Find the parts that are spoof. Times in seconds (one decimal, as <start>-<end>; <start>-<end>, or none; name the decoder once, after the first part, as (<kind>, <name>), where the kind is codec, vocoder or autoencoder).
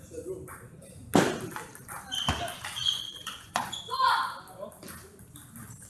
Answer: 2.8-3.8 (vocoder, Vocos)